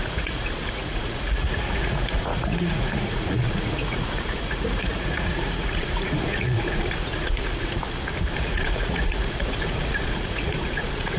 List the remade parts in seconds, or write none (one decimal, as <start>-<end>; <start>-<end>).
0.0-7.8; 8.4-11.2